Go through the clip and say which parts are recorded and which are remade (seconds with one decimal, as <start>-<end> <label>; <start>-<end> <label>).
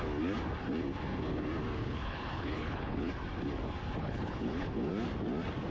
0.0-1.8 recorded; 1.8-3.1 remade; 3.1-4.0 recorded; 4.0-4.9 remade; 4.9-5.7 recorded